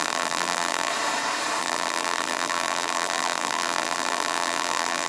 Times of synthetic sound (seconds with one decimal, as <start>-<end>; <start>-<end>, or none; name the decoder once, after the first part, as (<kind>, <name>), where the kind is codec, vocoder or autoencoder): 0.0-0.9 (vocoder, BigVGAN v2); 1.6-5.1